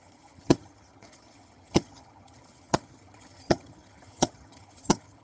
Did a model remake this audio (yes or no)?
yes